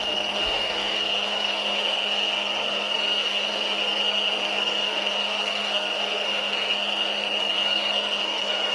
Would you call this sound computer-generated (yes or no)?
yes